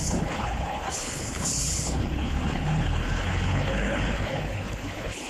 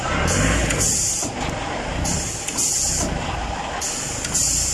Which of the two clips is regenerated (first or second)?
first